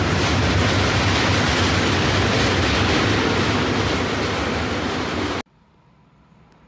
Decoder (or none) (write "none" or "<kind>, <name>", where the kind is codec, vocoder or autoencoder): none